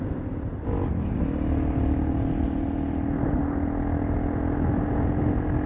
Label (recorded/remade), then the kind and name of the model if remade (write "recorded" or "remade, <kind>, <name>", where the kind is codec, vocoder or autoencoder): recorded